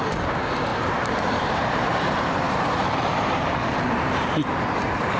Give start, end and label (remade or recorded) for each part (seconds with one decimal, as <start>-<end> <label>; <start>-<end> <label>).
0.0-5.2 remade